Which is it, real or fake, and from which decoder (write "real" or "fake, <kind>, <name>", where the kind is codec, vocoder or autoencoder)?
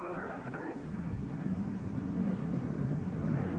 fake, codec, SNAC